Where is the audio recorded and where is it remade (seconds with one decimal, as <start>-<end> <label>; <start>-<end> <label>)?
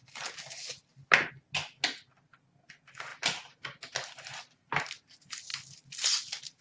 0.0-6.6 recorded